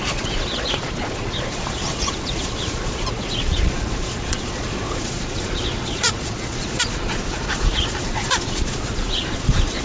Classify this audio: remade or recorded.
remade